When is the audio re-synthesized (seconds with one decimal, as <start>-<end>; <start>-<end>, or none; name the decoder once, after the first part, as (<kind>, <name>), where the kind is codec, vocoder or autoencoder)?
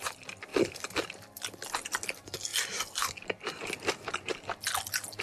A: none